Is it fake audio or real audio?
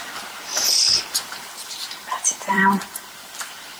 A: fake